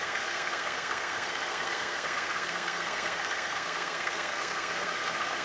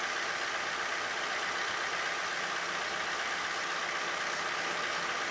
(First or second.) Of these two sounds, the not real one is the first